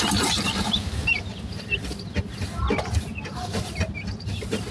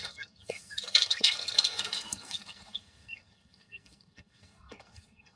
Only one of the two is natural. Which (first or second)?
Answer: first